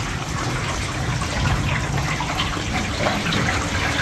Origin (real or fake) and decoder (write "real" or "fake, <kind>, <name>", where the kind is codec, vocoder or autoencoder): real